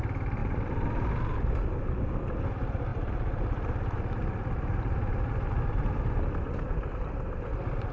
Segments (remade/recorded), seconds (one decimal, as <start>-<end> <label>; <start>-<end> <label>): 0.0-0.4 recorded; 0.4-1.1 remade; 1.1-2.9 recorded; 2.9-7.9 remade